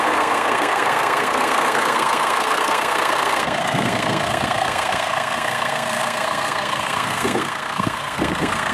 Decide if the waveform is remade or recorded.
remade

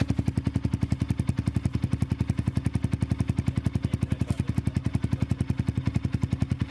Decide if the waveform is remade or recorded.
recorded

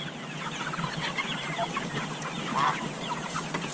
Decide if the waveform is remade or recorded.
recorded